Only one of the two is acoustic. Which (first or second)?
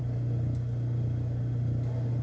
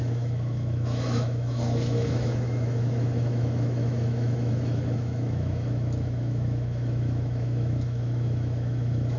first